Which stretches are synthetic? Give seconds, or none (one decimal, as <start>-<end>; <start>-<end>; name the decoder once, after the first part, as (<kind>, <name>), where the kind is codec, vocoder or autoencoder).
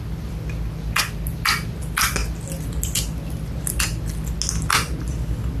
none